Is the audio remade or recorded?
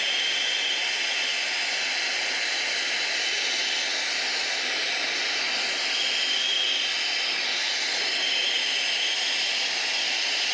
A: recorded